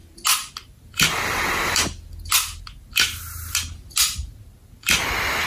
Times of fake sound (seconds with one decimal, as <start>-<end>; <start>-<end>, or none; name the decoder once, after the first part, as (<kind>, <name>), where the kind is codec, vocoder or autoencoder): none